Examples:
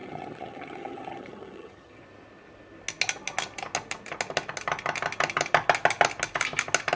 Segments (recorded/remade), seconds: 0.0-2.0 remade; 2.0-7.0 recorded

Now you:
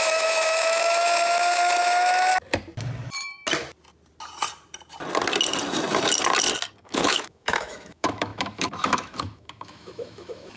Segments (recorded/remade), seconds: 0.0-2.3 remade; 2.3-6.8 recorded; 6.8-10.6 remade

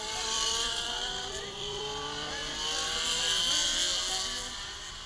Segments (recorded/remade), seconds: 0.0-2.4 remade; 2.4-5.1 recorded

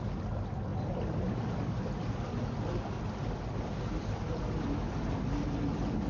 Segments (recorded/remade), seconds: 0.0-6.1 recorded

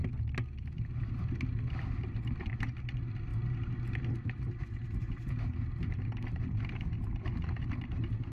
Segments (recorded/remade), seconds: 0.0-8.3 recorded